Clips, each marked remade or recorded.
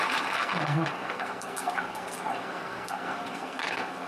remade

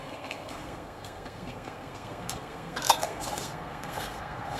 remade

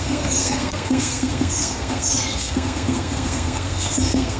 remade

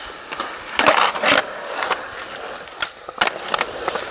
recorded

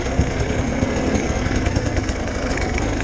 remade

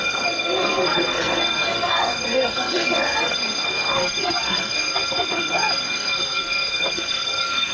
remade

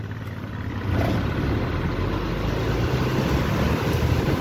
recorded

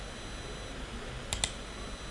recorded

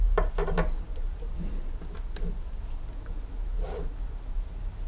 recorded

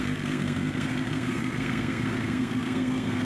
remade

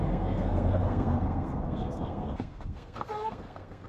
remade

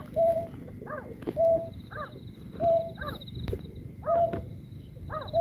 recorded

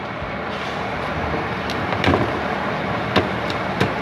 recorded